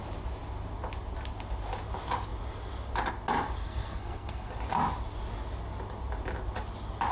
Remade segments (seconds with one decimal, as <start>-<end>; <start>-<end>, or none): 3.6-4.5